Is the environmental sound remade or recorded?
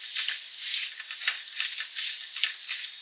recorded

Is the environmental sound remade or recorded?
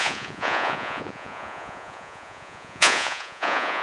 remade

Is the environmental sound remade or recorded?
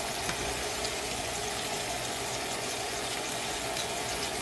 remade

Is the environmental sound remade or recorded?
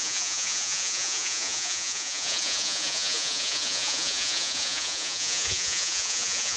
remade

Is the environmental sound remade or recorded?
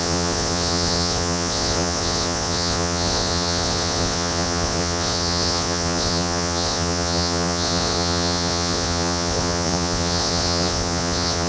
remade